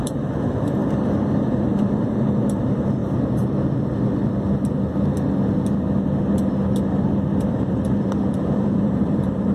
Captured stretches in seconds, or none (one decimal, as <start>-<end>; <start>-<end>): 0.8-1.5; 3.0-7.5